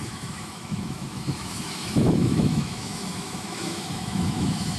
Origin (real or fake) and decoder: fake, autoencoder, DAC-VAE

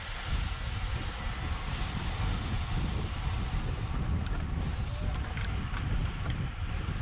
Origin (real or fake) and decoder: real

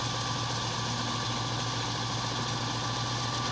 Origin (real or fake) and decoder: real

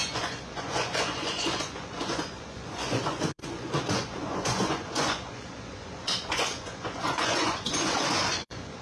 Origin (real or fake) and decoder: fake, vocoder, Vocos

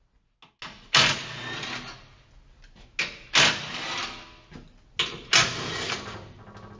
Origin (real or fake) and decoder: real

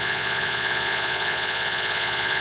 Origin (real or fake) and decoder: fake, vocoder, Vocos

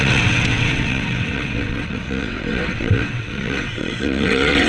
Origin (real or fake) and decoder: fake, vocoder, WaveNeXt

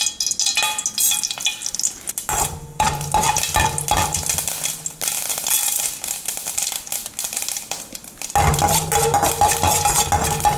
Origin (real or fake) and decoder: real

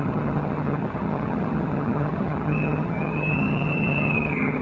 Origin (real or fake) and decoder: fake, vocoder, HiFi-GAN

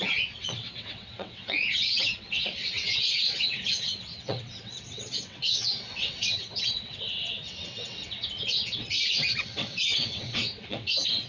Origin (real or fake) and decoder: fake, vocoder, WaveNeXt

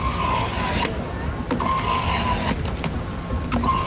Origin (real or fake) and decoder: real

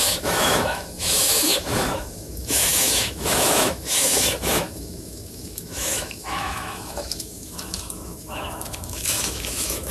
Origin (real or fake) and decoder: fake, autoencoder, DAC-VAE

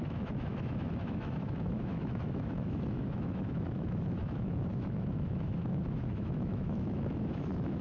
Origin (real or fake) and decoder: fake, autoencoder, DAC-VAE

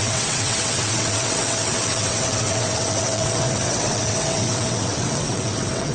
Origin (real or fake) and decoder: fake, vocoder, WaveNeXt